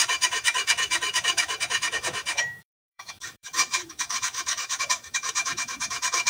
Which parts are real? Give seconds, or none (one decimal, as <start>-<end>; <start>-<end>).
none